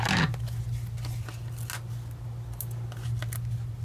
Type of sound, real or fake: real